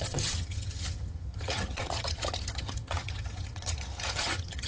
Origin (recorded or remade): remade